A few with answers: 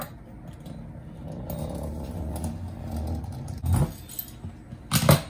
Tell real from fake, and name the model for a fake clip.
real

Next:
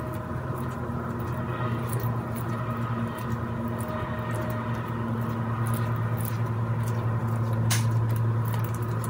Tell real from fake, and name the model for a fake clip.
real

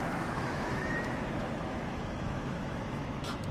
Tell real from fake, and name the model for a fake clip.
fake, autoencoder, DAC-VAE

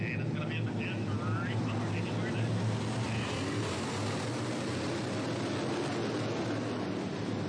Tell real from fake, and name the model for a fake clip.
real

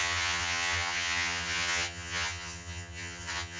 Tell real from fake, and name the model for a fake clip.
fake, vocoder, HiFi-GAN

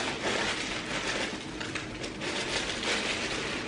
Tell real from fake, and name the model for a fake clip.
real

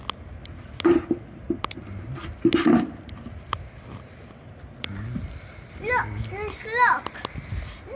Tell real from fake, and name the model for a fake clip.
real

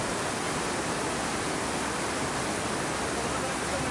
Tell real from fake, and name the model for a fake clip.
real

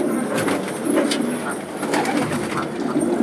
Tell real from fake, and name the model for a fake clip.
real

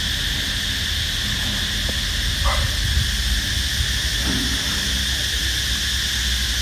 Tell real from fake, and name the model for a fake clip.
real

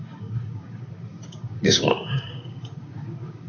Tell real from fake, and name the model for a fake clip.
fake, codec, DAC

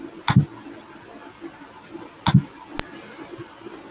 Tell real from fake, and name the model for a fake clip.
real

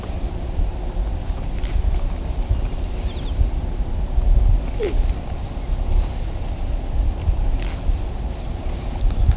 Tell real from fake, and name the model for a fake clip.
real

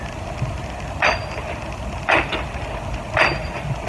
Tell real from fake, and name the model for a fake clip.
real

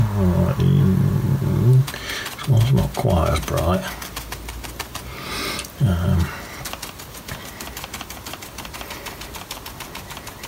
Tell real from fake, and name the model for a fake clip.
real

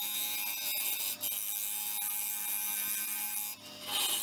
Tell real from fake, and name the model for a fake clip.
real